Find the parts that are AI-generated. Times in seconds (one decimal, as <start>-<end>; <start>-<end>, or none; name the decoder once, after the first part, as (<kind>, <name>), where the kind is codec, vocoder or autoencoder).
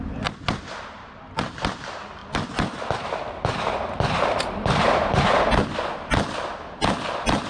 2.2-5.2 (vocoder, BigVGAN v2)